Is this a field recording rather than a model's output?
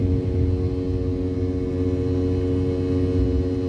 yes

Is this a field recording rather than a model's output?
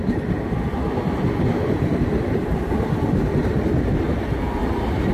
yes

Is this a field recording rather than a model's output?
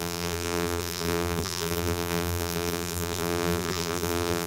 no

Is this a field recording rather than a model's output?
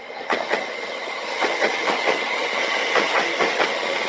no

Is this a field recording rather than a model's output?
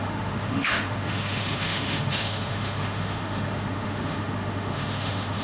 no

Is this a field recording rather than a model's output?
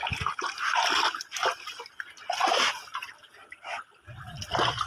yes